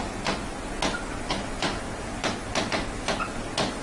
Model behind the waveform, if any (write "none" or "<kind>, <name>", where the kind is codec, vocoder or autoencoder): none